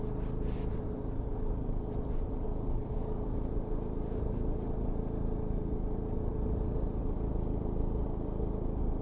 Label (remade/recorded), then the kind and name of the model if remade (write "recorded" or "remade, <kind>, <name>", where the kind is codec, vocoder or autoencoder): recorded